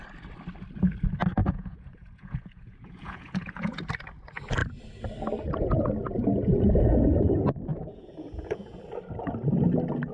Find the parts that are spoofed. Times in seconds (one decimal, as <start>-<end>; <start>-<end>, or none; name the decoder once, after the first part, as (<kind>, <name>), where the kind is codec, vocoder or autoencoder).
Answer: 1.4-3.9 (vocoder, Vocos); 7.7-8.8